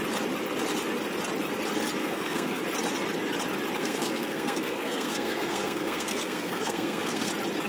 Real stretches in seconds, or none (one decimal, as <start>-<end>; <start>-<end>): 0.0-2.0; 2.6-3.8; 7.3-7.7

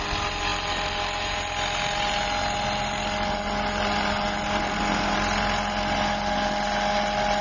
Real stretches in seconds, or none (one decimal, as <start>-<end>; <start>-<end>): 0.0-7.4

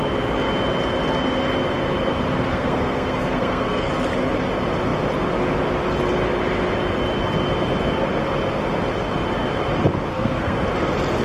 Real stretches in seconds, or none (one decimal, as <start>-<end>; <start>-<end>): 0.0-2.5; 3.9-10.1; 10.6-11.2

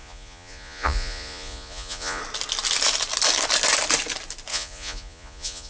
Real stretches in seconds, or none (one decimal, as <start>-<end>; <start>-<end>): 2.2-4.5

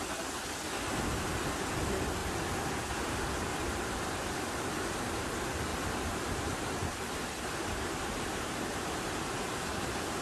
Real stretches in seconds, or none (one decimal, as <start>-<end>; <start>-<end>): 0.0-3.5; 5.2-6.8; 9.4-10.2